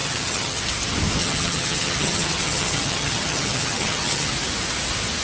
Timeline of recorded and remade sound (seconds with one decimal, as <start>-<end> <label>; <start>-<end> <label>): 0.0-0.6 remade; 0.6-1.2 recorded; 1.2-4.3 remade; 4.3-5.2 recorded